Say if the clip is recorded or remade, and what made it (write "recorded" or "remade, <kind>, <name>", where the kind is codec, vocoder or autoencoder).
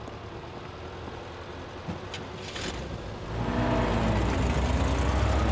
recorded